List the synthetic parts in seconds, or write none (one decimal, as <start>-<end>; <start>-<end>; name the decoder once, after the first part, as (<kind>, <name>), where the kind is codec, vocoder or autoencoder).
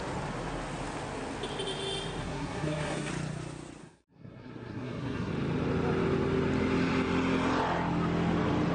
2.2-3.1 (codec, SNAC); 3.8-5.3